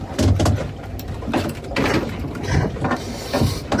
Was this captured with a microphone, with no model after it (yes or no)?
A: yes